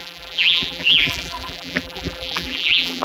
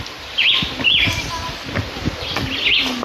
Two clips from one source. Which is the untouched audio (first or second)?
second